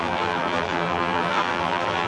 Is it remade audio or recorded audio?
remade